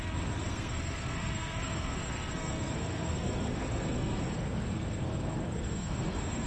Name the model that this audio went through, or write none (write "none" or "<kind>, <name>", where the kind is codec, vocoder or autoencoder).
codec, SNAC